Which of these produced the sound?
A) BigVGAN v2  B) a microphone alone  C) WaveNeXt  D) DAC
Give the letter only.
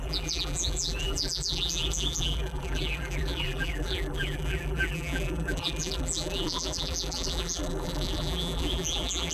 A